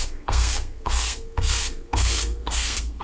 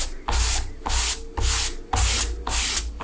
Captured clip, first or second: second